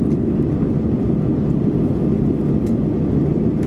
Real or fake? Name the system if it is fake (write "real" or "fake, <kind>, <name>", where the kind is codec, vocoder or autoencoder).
real